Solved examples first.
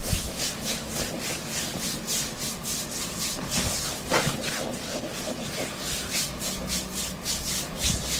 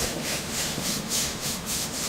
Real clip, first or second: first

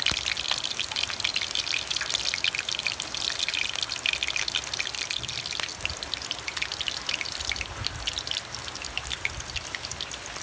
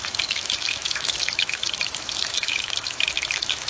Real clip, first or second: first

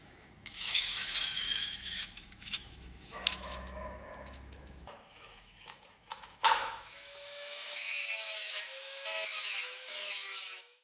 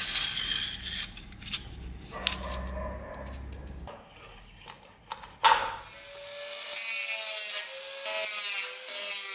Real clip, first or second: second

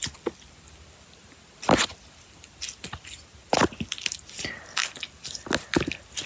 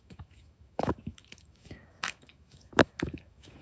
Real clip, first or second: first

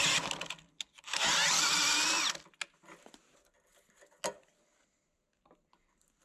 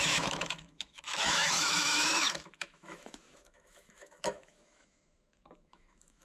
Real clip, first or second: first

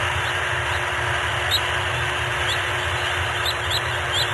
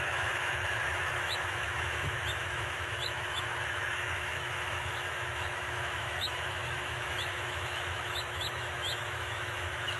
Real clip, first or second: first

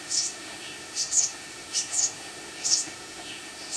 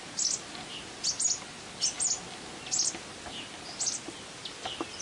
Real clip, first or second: second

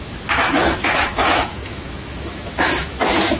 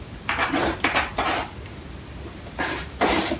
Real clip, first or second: second